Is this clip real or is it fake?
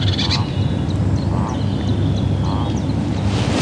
real